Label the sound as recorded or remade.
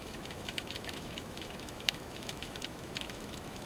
remade